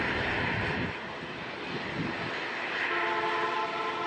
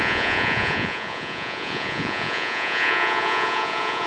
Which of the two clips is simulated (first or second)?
second